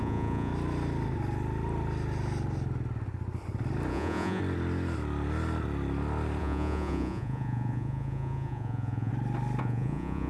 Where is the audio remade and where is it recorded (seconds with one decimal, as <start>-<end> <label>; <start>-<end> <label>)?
0.0-0.5 remade; 0.5-3.9 recorded; 3.9-4.4 remade; 4.4-6.4 recorded; 6.4-9.1 remade; 9.1-9.6 recorded; 9.6-10.3 remade